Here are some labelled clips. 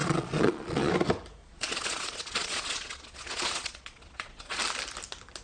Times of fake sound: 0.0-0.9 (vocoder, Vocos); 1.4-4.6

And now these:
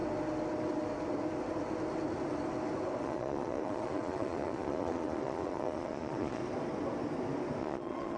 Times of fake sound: 3.0-6.4 (vocoder, Vocos); 7.6-8.2